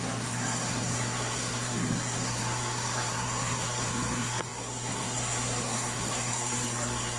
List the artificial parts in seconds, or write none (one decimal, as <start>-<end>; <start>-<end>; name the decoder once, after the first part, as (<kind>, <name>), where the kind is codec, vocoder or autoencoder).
0.0-7.2 (codec, SNAC)